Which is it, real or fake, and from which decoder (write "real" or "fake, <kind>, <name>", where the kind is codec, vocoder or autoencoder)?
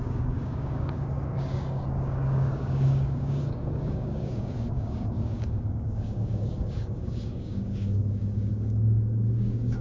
fake, codec, DAC